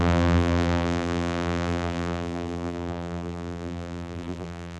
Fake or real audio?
fake